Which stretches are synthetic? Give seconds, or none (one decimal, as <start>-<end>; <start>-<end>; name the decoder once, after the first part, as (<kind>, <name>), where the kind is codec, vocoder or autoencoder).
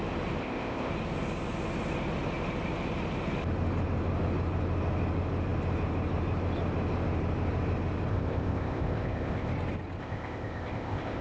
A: 0.4-0.9 (codec, ZipCodec); 8.1-9.5; 10.0-11.2